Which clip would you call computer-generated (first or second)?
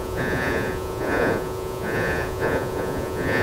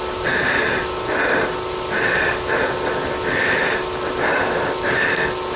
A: first